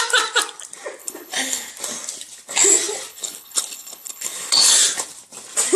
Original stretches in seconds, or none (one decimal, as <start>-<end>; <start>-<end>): 0.0-1.0; 1.7-3.1; 4.7-5.8